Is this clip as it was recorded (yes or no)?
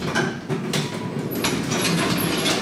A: yes